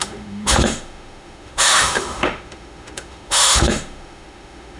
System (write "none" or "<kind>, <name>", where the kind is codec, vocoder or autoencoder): autoencoder, DAC-VAE